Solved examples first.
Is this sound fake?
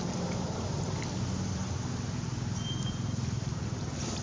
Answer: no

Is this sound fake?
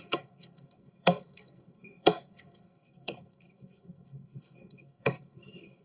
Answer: yes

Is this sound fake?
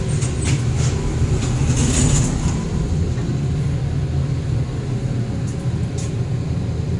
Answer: no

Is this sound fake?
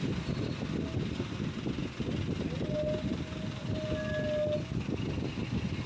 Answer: no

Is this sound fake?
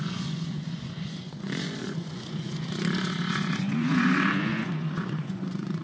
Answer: yes